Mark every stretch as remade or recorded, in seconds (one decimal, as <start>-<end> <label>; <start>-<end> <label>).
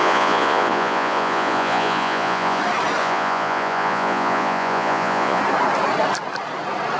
0.0-2.6 remade; 2.6-3.0 recorded; 3.0-5.4 remade; 5.4-7.0 recorded